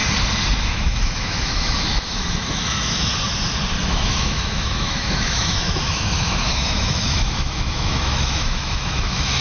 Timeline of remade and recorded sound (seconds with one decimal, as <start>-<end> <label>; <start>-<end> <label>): 0.0-0.6 recorded; 0.6-3.1 remade; 3.1-3.8 recorded; 3.8-9.4 remade